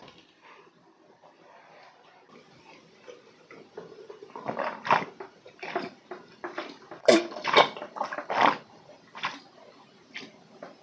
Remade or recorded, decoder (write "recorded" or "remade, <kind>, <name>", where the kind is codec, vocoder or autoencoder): remade, vocoder, BigVGAN v2